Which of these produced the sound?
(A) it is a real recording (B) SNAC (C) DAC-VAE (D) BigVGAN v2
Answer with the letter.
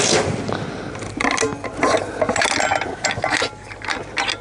A